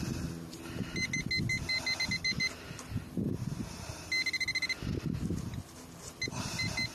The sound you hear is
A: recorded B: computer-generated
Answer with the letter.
A